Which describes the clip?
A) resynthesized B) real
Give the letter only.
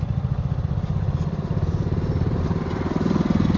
B